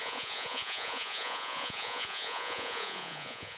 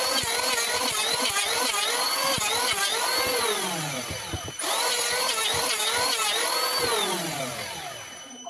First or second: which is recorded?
second